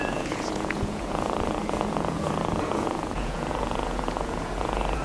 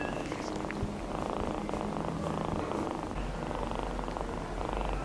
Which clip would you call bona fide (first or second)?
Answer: second